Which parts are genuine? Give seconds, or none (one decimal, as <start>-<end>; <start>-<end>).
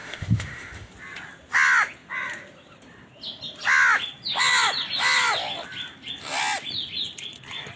0.9-7.8